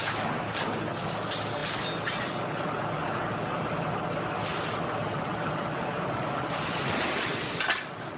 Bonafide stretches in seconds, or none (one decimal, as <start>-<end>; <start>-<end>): 0.0-8.2